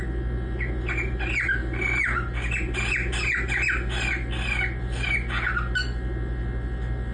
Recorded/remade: recorded